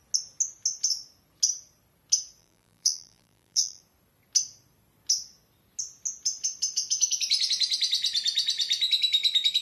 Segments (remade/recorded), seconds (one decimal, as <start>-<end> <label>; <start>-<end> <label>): 0.0-2.4 recorded; 2.4-3.8 remade; 3.8-9.6 recorded